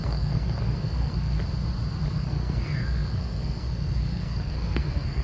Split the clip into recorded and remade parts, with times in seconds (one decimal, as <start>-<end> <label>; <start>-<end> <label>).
0.0-1.4 remade; 1.4-2.1 recorded; 2.1-5.2 remade